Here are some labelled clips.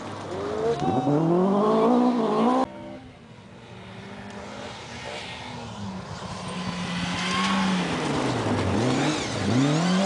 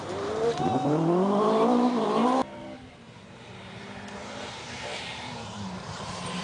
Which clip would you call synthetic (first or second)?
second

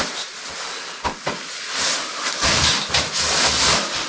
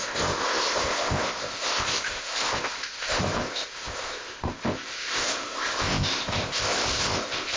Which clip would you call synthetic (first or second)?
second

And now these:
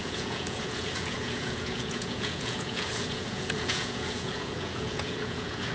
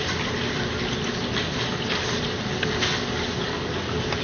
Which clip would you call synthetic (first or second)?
first